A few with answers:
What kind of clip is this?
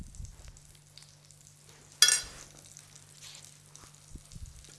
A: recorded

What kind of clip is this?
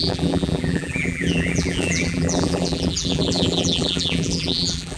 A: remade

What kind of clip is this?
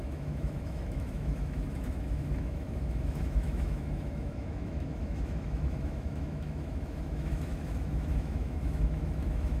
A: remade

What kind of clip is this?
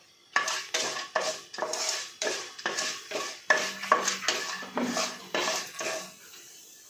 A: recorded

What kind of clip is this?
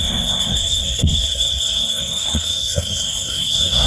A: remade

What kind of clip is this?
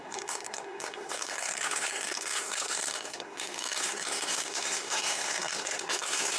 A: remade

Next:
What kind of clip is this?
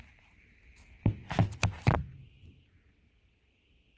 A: recorded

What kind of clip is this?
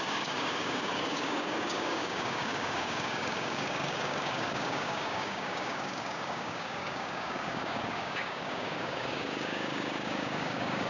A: remade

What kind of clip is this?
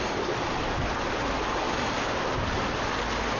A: recorded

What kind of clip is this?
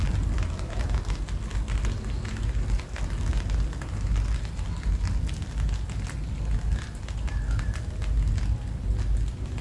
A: recorded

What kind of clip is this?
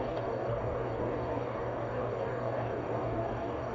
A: remade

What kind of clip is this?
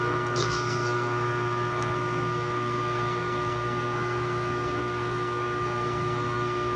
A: remade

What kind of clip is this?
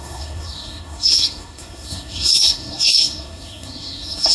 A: remade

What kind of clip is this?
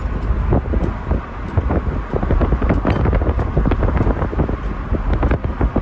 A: recorded